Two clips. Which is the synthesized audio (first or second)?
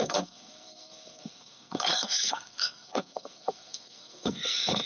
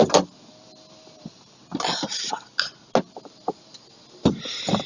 first